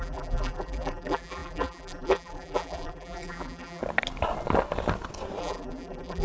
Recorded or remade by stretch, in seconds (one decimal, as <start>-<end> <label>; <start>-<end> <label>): 0.0-3.8 remade; 3.8-5.4 recorded; 5.4-6.2 remade